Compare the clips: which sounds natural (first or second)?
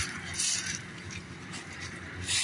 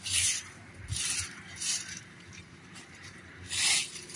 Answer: first